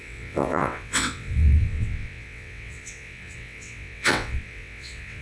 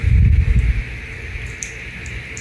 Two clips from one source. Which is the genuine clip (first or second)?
second